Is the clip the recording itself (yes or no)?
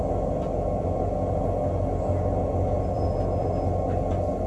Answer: yes